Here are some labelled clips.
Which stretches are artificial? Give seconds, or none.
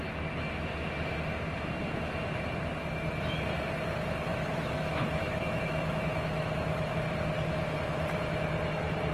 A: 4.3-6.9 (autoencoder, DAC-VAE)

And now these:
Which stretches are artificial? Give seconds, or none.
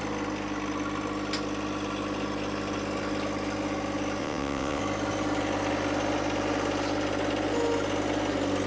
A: 4.2-4.8 (vocoder, WaveNeXt)